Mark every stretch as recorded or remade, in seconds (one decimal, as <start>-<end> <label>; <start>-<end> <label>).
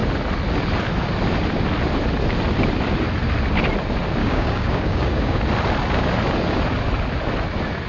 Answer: 0.0-4.2 recorded; 4.2-5.4 remade; 5.4-7.9 recorded